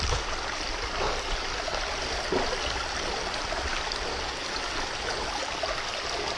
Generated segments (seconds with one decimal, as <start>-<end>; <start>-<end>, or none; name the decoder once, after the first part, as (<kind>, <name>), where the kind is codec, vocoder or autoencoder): none